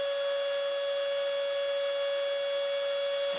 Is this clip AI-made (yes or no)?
no